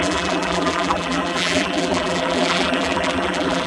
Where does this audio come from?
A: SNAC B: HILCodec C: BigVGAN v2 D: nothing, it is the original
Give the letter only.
C